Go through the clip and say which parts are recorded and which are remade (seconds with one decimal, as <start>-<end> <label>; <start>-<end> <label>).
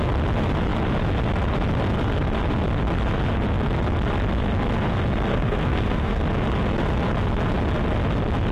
0.0-5.3 recorded; 5.3-6.2 remade; 6.2-8.5 recorded